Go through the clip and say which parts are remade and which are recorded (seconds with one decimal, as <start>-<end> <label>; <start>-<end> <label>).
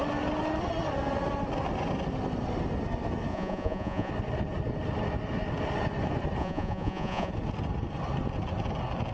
0.0-3.3 recorded; 3.3-4.1 remade; 4.1-6.4 recorded; 6.4-7.3 remade; 7.3-9.1 recorded